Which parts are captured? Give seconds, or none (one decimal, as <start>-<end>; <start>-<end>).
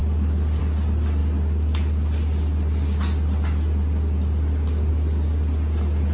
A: 0.0-6.1